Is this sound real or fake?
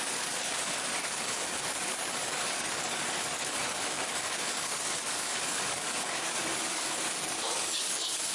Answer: fake